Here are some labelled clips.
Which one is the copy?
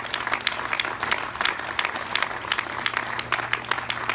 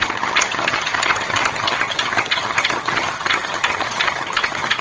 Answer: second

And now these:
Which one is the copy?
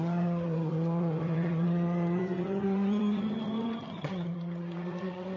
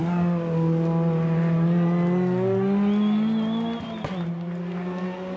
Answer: first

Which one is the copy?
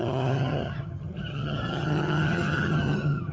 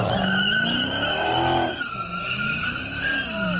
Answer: first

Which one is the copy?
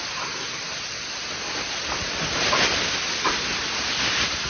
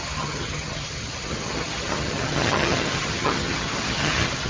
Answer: second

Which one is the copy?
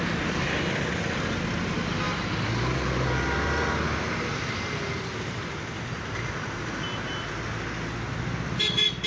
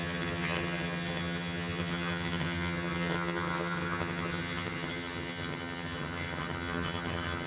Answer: second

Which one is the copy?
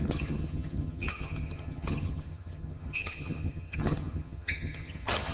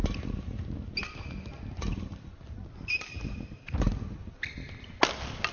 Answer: first